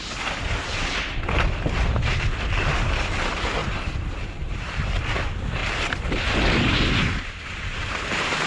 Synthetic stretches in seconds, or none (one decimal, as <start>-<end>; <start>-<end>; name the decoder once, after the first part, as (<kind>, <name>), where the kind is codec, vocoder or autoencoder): 3.6-4.9 (vocoder, BigVGAN v2); 5.6-6.2